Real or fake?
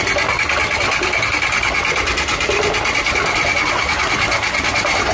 real